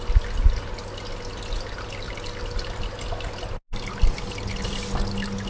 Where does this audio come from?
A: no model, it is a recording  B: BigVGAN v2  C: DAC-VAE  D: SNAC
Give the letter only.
A